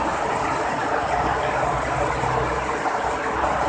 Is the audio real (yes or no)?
yes